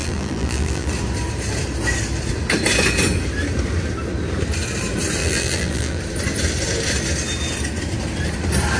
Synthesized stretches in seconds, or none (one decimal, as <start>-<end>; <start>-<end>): 0.0-0.9; 5.2-6.0